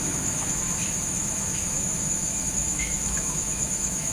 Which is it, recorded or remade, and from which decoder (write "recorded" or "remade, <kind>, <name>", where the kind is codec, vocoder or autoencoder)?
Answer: remade, autoencoder, DAC-VAE